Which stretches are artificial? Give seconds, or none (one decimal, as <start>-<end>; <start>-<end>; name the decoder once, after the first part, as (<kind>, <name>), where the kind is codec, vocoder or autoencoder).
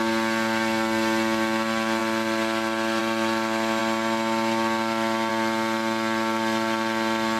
none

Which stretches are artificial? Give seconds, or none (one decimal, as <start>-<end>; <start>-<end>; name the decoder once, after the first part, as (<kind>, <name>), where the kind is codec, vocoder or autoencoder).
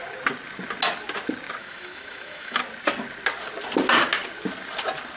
1.6-2.6 (autoencoder, DAC-VAE)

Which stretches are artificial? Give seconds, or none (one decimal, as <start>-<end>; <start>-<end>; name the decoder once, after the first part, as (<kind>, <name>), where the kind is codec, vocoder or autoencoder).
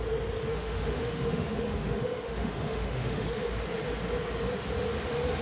0.5-3.4 (autoencoder, DAC-VAE)